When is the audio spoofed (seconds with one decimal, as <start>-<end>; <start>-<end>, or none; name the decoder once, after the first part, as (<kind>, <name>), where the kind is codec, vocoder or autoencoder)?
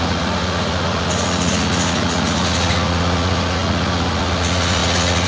0.0-5.3 (vocoder, Vocos)